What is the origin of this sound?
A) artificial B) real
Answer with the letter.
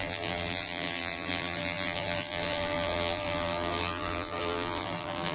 A